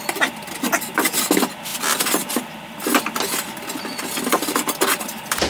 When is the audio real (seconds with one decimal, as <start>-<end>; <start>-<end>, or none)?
0.0-5.5